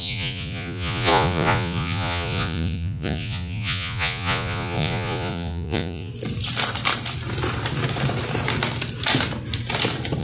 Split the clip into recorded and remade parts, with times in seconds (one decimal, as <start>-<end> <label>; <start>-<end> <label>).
0.0-6.1 remade; 6.1-10.2 recorded